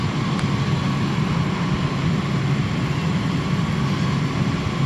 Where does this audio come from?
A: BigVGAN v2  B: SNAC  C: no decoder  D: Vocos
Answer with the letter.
C